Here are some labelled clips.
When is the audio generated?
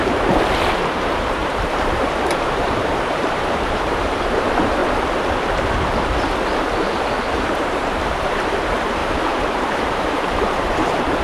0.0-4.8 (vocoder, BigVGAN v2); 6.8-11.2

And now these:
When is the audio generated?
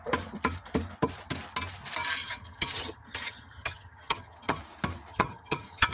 2.2-4.6 (vocoder, HiFi-GAN); 5.1-5.9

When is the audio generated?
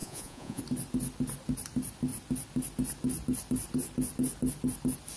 0.0-0.6 (vocoder, Vocos)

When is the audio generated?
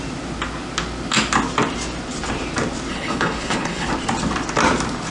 2.9-3.9 (codec, HILCodec)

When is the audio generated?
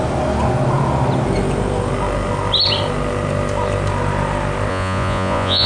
4.7-5.7 (vocoder, Vocos)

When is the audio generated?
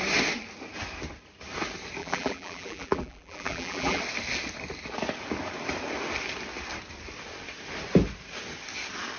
2.0-4.0 (vocoder, BigVGAN v2)